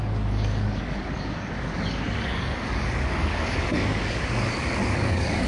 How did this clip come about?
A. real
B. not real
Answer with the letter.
B